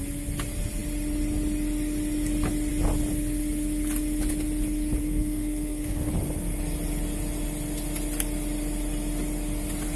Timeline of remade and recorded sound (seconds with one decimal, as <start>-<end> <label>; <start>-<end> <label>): 0.0-5.0 recorded; 5.0-6.1 remade; 6.1-10.0 recorded